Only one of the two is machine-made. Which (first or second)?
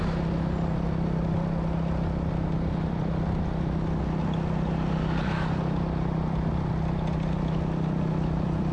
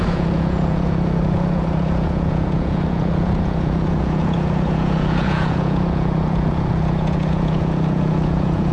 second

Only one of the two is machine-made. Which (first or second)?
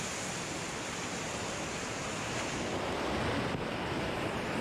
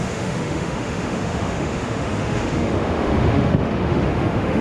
second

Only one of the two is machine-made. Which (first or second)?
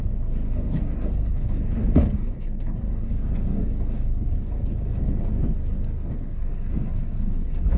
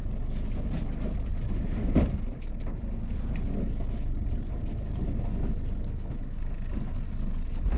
first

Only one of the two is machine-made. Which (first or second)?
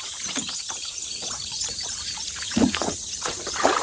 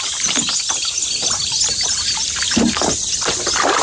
first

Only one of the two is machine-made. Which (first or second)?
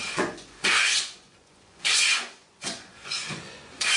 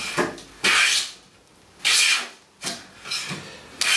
first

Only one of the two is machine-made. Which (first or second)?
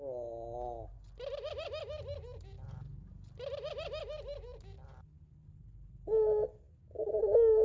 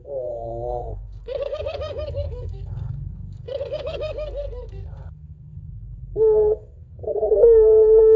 second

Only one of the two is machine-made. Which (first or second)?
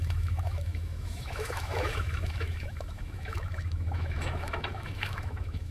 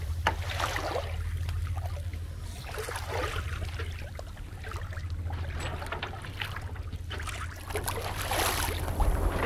first